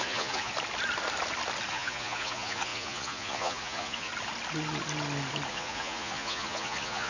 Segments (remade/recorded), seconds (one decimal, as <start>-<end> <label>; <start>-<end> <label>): 0.0-0.5 remade; 0.5-1.7 recorded; 1.7-4.1 remade; 4.1-5.5 recorded; 5.5-7.1 remade